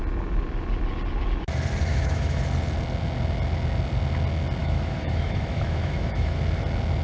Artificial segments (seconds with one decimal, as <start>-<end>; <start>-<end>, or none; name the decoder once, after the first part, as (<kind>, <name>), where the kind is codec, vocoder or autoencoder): 1.9-2.4 (autoencoder, DAC-VAE); 4.6-6.4